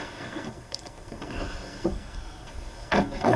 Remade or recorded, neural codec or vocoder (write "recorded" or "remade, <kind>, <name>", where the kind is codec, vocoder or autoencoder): remade, codec, SNAC